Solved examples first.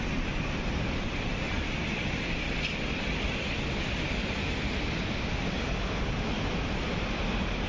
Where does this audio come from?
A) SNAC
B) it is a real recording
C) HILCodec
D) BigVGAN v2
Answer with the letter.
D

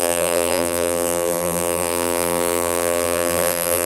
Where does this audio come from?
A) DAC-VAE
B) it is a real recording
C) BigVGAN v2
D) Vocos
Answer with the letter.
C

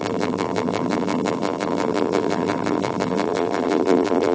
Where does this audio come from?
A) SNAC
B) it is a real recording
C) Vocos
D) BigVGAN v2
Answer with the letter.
D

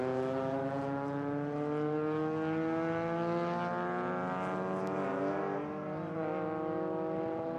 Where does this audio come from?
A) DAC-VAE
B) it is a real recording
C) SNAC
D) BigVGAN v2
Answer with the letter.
B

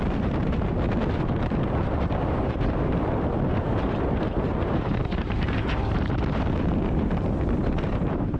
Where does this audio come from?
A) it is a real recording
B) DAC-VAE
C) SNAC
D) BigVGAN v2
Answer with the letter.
D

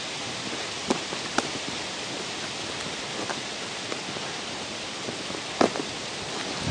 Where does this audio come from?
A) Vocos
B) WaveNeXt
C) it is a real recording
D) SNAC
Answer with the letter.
C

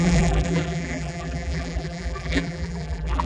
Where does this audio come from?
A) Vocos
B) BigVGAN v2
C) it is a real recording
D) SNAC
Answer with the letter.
B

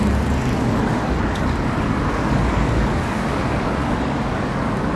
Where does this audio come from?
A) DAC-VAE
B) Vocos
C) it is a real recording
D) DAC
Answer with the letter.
D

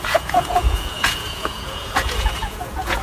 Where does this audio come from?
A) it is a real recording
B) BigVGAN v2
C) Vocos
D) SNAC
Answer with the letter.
C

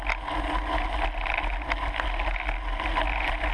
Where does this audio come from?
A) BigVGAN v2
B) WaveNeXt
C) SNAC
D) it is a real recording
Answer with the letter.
D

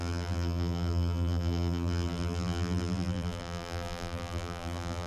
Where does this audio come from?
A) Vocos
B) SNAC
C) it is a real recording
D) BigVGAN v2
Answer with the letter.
D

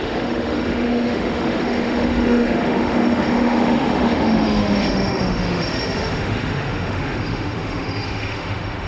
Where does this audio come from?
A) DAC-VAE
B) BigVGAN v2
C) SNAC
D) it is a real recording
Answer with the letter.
A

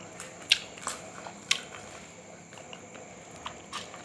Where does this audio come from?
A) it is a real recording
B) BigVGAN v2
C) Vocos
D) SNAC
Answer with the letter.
A